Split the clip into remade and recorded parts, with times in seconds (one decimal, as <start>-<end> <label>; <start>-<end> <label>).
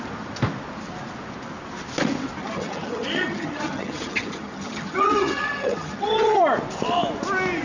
0.0-2.4 recorded; 2.4-6.4 remade; 6.4-7.6 recorded